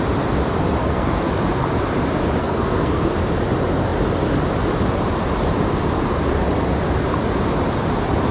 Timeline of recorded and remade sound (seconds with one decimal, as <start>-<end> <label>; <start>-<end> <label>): 0.0-0.8 recorded; 0.8-1.3 remade; 1.3-2.4 recorded; 2.4-3.0 remade; 3.0-8.3 recorded